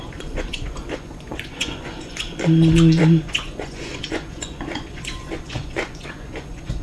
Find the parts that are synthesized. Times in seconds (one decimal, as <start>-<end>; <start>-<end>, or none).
0.0-6.8